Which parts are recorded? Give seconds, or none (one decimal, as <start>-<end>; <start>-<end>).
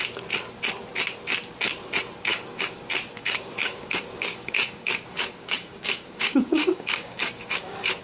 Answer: 0.0-2.3; 2.8-3.2